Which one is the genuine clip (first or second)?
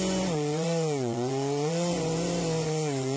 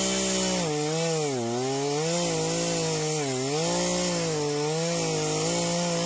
second